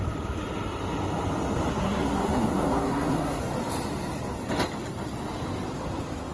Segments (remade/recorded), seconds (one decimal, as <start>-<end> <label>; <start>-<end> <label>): 0.0-1.7 recorded; 1.7-3.4 remade; 3.4-6.3 recorded